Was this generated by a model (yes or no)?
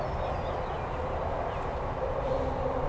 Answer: no